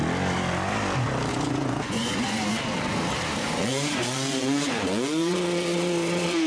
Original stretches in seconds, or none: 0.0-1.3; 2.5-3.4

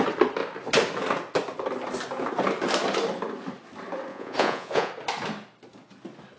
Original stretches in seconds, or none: 0.0-4.1; 4.9-6.4

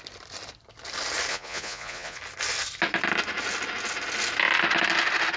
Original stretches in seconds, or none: 0.0-1.3; 2.2-5.4

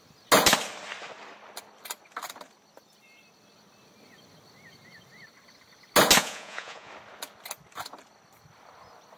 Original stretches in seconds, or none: 0.0-6.2; 6.9-9.2

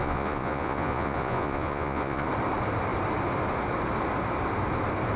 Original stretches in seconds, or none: 2.3-5.2

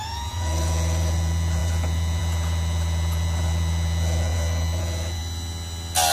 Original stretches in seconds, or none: 5.2-6.1